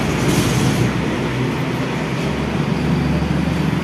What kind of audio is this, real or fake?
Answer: real